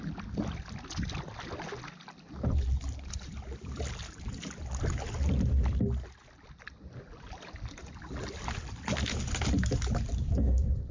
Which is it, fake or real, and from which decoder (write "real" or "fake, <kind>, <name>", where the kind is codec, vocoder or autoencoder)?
real